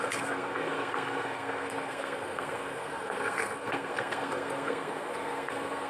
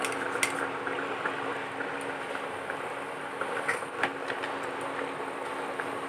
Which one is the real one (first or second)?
second